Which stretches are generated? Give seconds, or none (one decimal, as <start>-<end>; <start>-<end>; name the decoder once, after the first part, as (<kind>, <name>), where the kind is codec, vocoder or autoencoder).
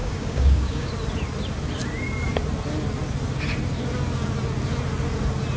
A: 0.0-0.9 (codec, DAC)